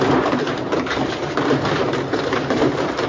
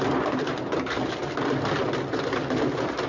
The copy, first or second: first